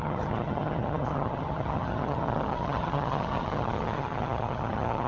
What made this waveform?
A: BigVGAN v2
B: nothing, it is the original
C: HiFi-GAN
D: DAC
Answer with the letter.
C